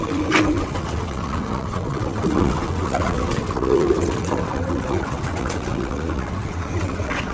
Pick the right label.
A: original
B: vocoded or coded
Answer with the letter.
B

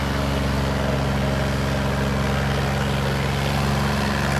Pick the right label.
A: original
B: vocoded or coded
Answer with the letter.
A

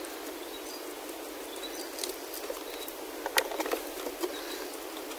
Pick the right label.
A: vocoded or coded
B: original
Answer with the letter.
B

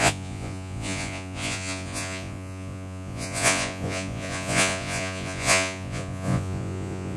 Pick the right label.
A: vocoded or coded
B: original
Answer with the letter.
A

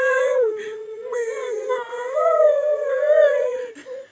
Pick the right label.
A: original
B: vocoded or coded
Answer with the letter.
B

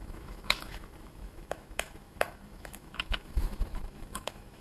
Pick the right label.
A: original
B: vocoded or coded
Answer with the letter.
B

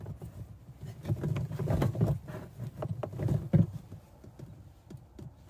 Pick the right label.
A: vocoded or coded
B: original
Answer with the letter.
B